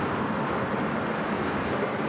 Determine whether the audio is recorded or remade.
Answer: recorded